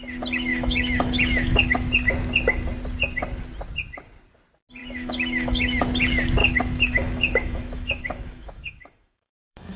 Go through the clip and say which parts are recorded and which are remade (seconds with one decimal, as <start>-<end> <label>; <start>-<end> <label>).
0.0-0.5 recorded; 0.5-1.9 remade; 1.9-4.8 recorded; 4.8-5.8 remade; 5.8-6.4 recorded; 6.4-9.8 remade